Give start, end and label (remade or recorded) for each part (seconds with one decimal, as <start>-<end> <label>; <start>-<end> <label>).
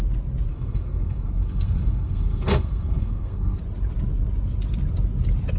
0.0-0.5 recorded; 0.5-3.6 remade; 3.6-5.6 recorded